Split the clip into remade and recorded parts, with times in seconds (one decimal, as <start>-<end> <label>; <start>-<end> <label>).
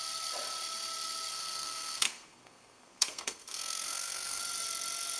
0.0-1.3 recorded; 1.3-4.4 remade; 4.4-5.2 recorded